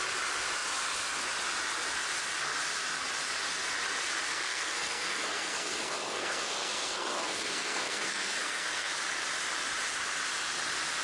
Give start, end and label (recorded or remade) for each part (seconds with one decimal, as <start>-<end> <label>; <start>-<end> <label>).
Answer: 0.0-4.3 recorded; 4.3-8.9 remade; 8.9-11.0 recorded

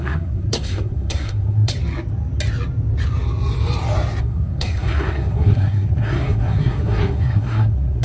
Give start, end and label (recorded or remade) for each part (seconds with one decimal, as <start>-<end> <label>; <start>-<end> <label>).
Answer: 0.0-1.7 remade; 1.7-4.2 recorded; 4.2-8.0 remade

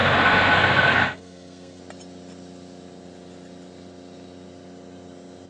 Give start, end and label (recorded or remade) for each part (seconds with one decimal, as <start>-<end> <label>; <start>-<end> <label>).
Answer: 0.0-1.8 remade; 1.8-5.5 recorded